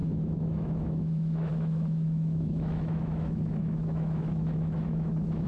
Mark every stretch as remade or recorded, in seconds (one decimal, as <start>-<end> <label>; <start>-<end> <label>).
0.0-5.5 remade